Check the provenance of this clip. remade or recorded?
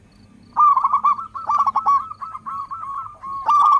recorded